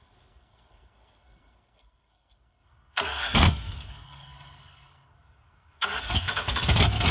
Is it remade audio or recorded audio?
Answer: remade